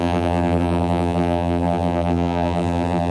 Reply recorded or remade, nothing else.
remade